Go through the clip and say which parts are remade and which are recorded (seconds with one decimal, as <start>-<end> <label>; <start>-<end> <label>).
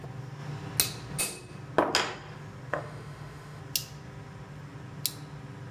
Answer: 0.0-2.7 recorded; 2.7-3.6 remade; 3.6-5.7 recorded